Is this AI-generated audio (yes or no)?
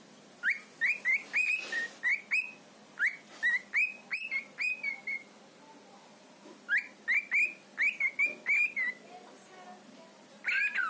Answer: no